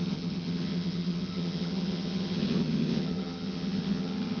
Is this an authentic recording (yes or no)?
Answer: no